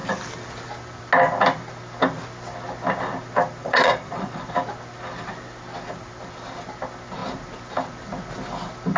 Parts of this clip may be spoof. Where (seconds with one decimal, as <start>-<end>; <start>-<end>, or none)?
3.6-4.4